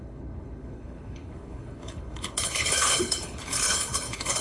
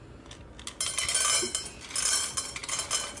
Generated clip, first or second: first